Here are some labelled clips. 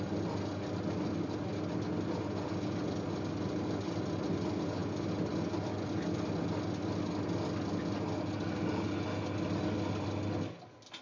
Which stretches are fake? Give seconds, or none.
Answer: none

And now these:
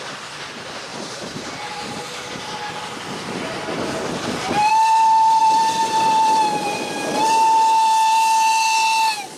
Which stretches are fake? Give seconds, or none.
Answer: 0.9-4.7 (vocoder, BigVGAN v2); 5.4-6.9

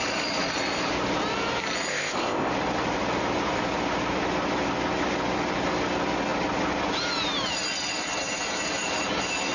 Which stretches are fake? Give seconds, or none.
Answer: 1.9-2.5 (codec, ZipCodec)

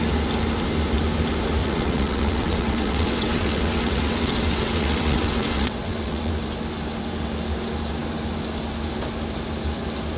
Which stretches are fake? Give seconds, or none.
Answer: 1.6-6.3 (vocoder, WaveNeXt)